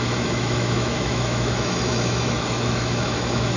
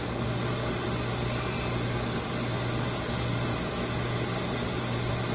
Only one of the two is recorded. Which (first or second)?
second